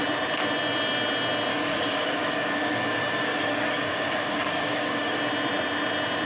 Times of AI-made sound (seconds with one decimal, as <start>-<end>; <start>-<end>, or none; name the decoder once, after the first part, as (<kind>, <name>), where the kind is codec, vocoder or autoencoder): 1.5-5.2 (codec, DAC)